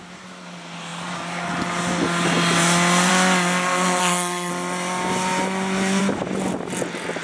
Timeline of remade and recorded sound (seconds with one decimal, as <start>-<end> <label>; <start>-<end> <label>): 0.0-4.0 recorded; 4.0-4.5 remade; 4.5-7.2 recorded